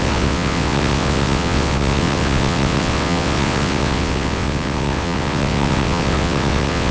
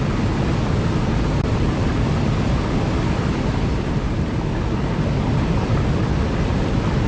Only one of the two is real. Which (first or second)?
second